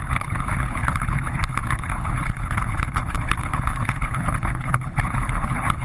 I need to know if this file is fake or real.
fake